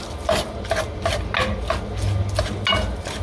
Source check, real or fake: real